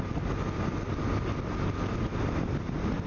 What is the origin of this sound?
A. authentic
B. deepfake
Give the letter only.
A